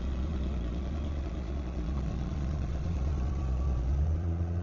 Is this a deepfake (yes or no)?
yes